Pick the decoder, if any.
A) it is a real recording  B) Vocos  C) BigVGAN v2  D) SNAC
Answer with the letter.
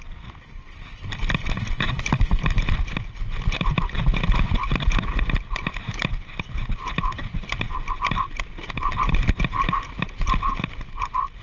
A